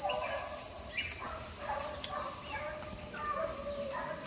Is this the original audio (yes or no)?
yes